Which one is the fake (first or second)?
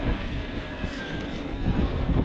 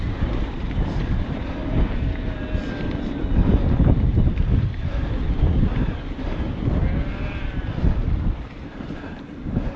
first